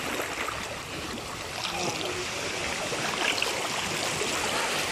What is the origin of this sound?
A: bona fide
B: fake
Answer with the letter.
A